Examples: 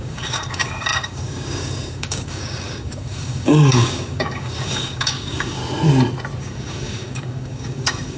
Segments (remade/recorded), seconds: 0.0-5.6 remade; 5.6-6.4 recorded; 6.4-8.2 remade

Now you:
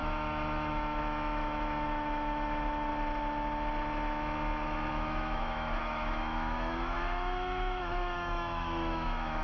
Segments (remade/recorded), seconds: 0.0-2.9 remade; 2.9-4.9 recorded; 4.9-9.4 remade

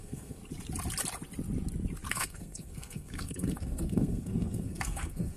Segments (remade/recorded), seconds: 0.0-0.4 remade; 0.4-2.1 recorded; 2.1-5.4 remade

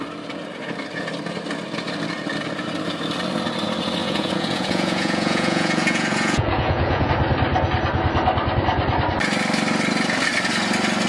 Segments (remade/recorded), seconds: 0.0-4.0 recorded; 4.0-7.1 remade; 7.1-11.1 recorded